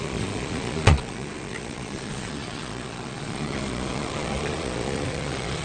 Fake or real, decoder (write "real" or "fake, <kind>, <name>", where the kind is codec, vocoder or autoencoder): fake, vocoder, Vocos